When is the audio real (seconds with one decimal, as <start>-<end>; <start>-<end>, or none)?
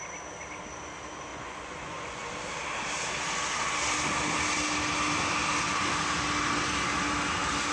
0.0-1.3; 2.3-7.7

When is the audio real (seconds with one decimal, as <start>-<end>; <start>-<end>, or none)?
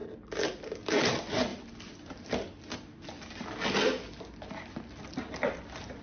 0.0-6.0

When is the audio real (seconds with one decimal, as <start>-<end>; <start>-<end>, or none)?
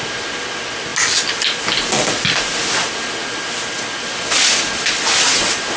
0.0-5.8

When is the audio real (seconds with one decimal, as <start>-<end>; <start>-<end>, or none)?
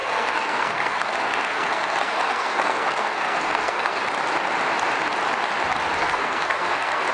4.0-6.0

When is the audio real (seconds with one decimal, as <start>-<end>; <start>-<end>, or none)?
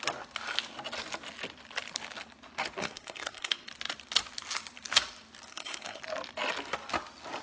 0.0-2.8; 3.7-5.5; 6.0-7.4